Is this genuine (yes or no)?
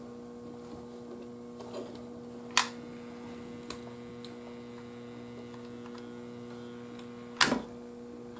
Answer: yes